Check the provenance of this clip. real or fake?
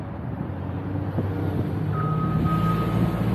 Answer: real